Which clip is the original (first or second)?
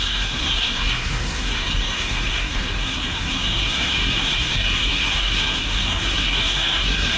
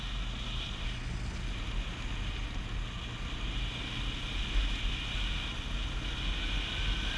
second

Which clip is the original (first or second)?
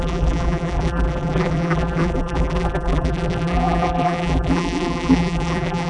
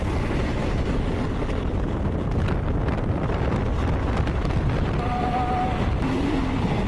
second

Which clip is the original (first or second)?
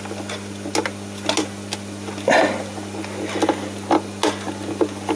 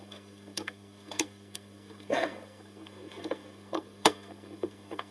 first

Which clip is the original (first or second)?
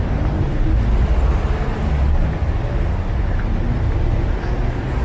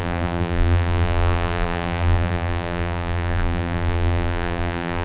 first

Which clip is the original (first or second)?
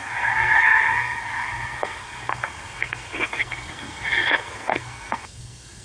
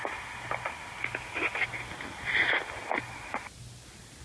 second